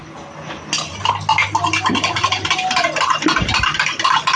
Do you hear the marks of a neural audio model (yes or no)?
no